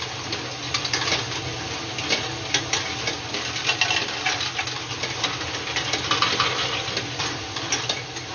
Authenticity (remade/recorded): recorded